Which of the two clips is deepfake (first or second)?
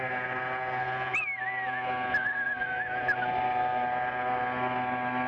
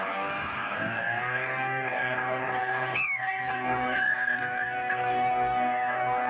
second